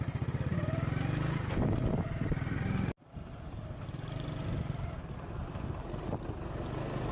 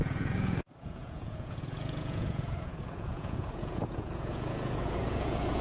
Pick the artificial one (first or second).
second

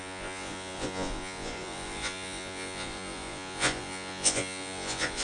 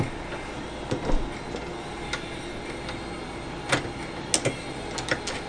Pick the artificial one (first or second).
first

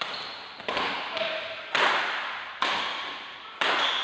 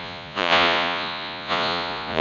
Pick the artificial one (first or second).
second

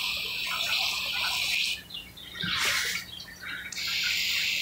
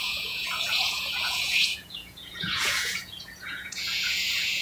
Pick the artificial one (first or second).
second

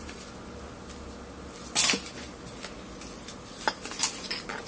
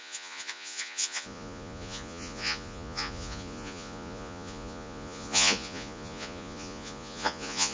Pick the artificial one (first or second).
second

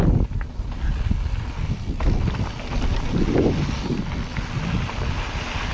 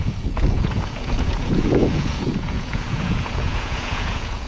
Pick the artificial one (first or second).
second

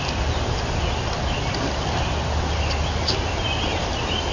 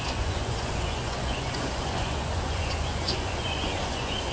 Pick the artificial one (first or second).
second